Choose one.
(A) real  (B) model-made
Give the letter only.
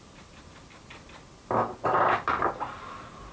A